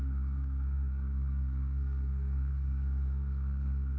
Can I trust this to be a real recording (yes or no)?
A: no